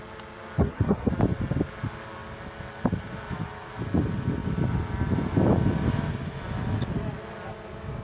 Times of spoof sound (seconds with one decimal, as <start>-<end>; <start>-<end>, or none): 0.6-1.1